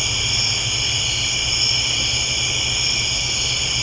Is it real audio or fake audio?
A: real